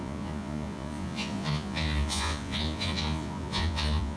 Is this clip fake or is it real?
fake